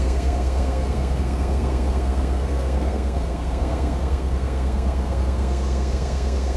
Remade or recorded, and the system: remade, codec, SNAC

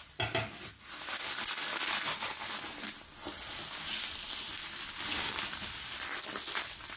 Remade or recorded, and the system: recorded